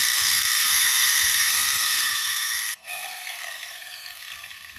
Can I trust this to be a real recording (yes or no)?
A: no